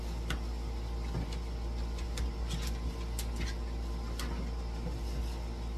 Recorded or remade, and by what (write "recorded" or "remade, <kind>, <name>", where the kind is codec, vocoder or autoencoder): recorded